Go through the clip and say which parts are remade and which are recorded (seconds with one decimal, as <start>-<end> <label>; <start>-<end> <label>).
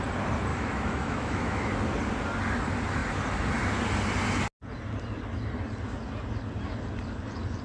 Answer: 0.0-0.5 recorded; 0.5-1.7 remade; 1.7-7.6 recorded